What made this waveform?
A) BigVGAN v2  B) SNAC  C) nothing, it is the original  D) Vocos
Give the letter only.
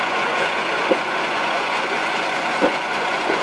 D